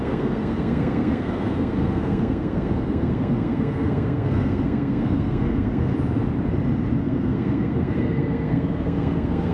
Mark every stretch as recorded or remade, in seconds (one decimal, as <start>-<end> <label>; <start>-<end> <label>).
0.0-5.9 remade; 5.9-7.0 recorded; 7.0-9.5 remade